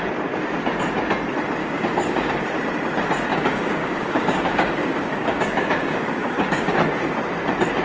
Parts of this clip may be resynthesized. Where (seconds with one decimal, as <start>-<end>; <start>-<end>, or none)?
1.6-2.3; 3.3-6.8